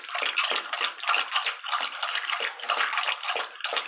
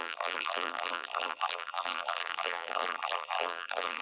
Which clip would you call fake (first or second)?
second